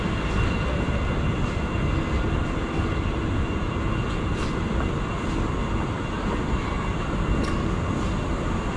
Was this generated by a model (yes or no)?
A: no